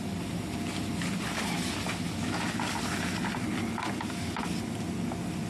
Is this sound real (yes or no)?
yes